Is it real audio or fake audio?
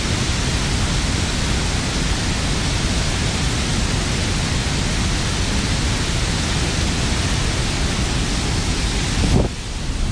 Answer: real